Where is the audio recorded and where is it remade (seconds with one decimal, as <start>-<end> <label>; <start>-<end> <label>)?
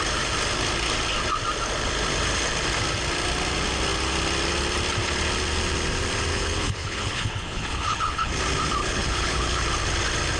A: 0.0-6.3 recorded; 6.3-8.3 remade; 8.3-8.8 recorded; 8.8-9.6 remade; 9.6-10.4 recorded